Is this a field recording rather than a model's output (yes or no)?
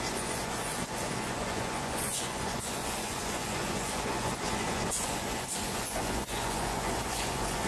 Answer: no